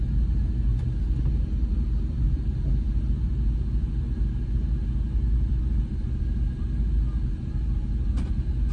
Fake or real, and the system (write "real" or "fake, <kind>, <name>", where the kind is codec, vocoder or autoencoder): real